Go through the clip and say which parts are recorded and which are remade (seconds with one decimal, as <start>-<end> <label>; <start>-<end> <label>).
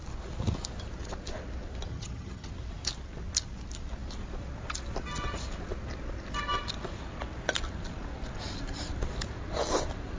0.0-1.9 recorded; 1.9-2.5 remade; 2.5-10.2 recorded